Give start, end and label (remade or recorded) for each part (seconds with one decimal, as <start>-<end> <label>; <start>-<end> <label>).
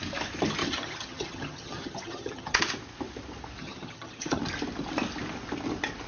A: 0.0-0.6 recorded; 0.6-2.6 remade; 2.6-3.6 recorded; 3.6-4.4 remade; 4.4-6.1 recorded